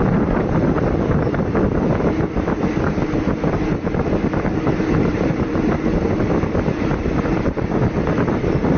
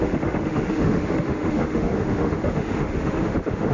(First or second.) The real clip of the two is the first